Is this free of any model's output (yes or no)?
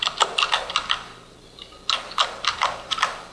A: yes